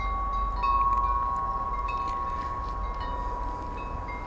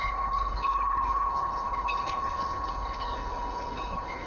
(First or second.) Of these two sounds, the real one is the first